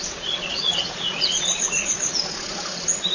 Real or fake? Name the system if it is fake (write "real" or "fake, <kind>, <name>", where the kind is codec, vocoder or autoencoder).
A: fake, vocoder, Vocos